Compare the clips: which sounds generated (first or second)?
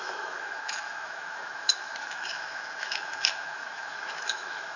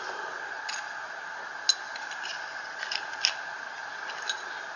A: first